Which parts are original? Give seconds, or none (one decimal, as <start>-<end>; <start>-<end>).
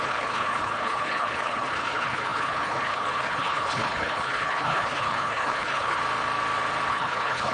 6.0-6.9